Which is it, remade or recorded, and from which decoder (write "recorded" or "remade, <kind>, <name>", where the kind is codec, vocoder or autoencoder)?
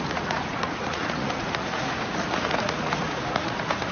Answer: remade, vocoder, Vocos